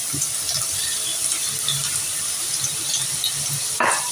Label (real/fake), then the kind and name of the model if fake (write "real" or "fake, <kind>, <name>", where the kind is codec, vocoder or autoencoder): real